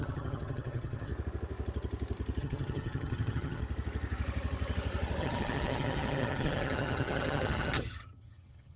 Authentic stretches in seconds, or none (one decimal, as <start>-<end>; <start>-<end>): 1.1-2.4; 3.6-5.2